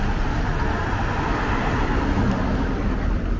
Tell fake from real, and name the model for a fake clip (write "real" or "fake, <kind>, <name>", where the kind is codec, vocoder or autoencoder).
real